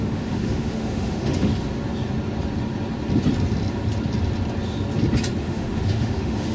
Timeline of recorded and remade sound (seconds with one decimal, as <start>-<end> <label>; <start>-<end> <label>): 0.0-1.5 remade; 1.5-5.4 recorded; 5.4-6.5 remade

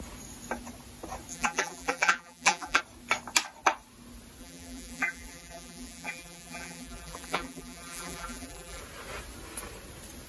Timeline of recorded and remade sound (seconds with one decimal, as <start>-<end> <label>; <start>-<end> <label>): 0.0-1.3 recorded; 1.3-2.8 remade; 2.8-4.4 recorded; 4.4-8.8 remade; 8.8-10.3 recorded

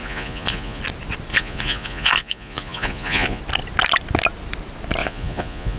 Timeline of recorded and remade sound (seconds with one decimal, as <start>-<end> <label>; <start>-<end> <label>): 0.0-0.8 remade; 0.8-1.3 recorded; 1.3-3.4 remade; 3.4-5.0 recorded; 5.0-5.8 remade

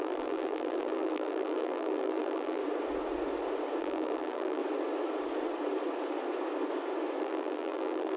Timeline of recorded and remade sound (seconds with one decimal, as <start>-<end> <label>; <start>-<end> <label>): 0.0-2.6 remade; 2.6-3.8 recorded; 3.8-4.6 remade; 4.6-7.2 recorded; 7.2-8.2 remade

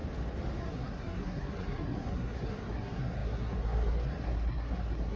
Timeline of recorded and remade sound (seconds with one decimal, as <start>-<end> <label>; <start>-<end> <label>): 0.0-0.6 recorded; 0.6-5.2 remade

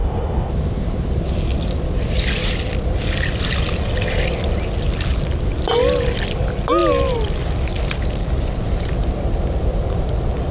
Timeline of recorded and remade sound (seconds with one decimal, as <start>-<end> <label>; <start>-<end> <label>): 0.0-0.5 remade; 0.5-10.5 recorded

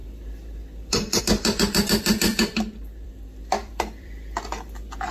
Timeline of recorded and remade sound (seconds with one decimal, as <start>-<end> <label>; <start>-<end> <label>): 0.0-2.3 recorded; 2.3-3.1 remade; 3.1-3.6 recorded; 3.6-4.4 remade; 4.4-5.1 recorded